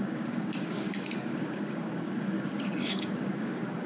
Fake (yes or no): yes